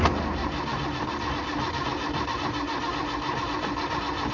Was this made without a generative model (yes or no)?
yes